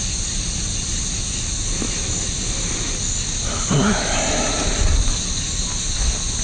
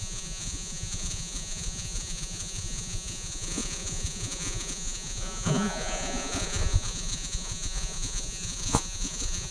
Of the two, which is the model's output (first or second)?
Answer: second